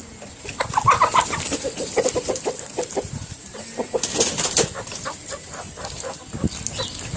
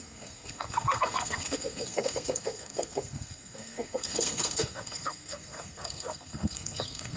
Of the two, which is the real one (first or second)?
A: first